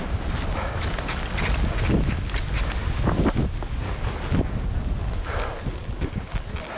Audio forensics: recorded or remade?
recorded